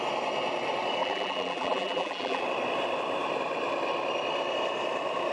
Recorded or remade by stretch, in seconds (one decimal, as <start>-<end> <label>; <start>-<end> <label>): 0.0-1.0 recorded; 1.0-2.4 remade; 2.4-5.3 recorded